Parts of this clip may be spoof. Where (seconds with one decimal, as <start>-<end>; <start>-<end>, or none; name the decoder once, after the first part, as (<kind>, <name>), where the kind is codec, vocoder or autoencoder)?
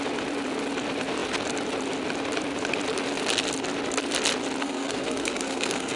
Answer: 4.6-6.0 (codec, SNAC)